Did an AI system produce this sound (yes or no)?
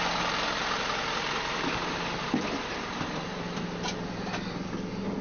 no